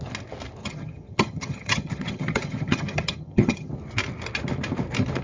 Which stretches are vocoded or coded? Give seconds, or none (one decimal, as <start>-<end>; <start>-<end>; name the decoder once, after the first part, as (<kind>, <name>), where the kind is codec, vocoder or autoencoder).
0.6-3.7 (vocoder, HiFi-GAN)